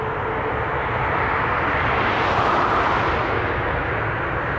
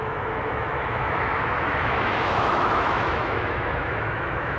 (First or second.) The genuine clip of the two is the first